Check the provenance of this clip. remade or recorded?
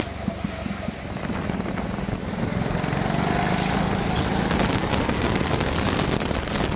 recorded